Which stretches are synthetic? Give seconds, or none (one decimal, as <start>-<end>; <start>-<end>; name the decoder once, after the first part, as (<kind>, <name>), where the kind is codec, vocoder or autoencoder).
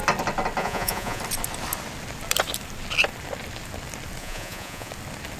0.6-1.2 (vocoder, Vocos); 4.2-4.9